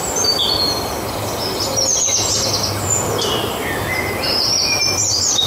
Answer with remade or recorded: recorded